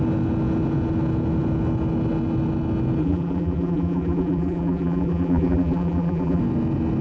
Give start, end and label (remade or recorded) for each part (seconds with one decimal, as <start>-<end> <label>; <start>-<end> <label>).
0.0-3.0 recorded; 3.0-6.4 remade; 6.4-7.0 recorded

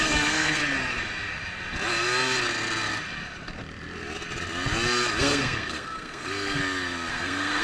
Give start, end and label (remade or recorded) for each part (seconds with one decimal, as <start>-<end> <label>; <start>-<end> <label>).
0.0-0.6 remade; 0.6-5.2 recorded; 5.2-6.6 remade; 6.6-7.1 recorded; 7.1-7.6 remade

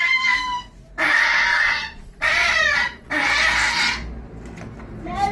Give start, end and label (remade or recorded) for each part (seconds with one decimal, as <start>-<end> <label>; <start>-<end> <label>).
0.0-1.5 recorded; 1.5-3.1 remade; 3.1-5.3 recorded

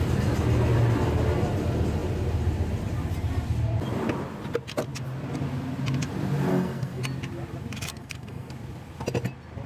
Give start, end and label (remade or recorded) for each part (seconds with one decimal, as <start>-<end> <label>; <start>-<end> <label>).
0.0-6.5 recorded; 6.5-7.0 remade; 7.0-7.9 recorded; 7.9-8.5 remade; 8.5-9.7 recorded

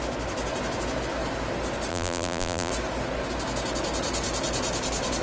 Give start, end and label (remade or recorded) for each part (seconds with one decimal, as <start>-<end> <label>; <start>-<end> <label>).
0.0-1.9 recorded; 1.9-2.7 remade; 2.7-5.2 recorded

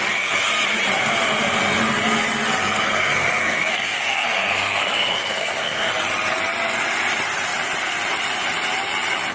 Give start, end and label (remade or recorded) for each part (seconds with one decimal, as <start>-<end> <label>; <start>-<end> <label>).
0.0-2.6 recorded; 2.6-5.9 remade; 5.9-9.3 recorded